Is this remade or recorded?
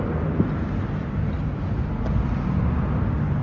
recorded